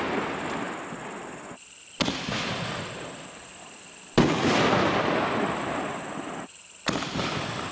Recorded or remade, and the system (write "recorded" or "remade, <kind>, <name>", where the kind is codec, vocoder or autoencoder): recorded